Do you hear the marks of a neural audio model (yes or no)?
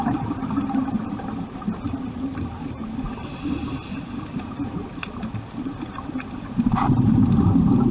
yes